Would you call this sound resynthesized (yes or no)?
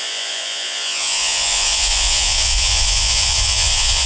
yes